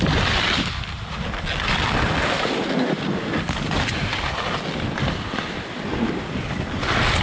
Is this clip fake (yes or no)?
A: no